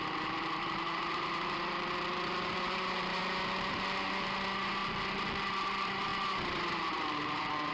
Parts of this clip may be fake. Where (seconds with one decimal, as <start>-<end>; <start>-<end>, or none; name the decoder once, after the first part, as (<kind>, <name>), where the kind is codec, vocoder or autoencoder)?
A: 0.0-3.2 (vocoder, BigVGAN v2); 3.7-4.8; 5.4-7.7